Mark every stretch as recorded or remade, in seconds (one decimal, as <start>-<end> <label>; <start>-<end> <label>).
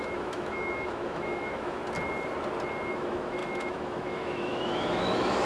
0.0-1.8 remade; 1.8-2.9 recorded; 2.9-5.5 remade